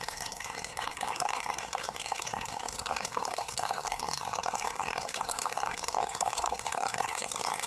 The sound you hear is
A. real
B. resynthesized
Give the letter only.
B